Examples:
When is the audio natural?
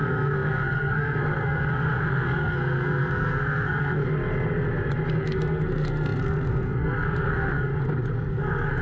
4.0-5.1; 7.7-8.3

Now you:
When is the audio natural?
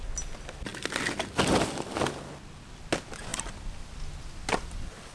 0.0-5.1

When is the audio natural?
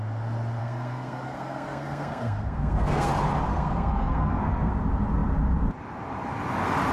0.0-0.6; 3.1-3.5; 4.7-6.9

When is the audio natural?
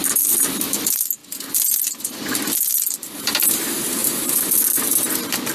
0.0-3.0; 3.6-4.0; 5.0-5.5